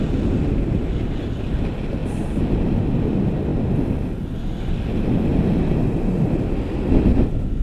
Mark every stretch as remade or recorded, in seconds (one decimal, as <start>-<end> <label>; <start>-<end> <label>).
0.0-7.6 recorded